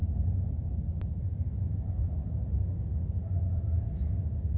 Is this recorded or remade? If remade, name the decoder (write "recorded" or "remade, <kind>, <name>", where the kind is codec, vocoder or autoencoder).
recorded